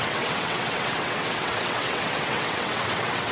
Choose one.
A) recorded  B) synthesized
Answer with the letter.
B